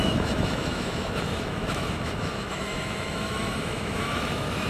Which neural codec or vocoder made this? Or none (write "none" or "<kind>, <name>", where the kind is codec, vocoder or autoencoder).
autoencoder, DAC-VAE